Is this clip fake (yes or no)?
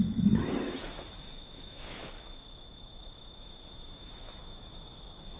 yes